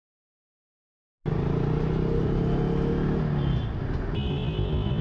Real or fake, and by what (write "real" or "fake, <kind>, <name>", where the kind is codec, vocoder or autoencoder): real